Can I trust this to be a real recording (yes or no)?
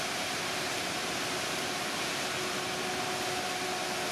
yes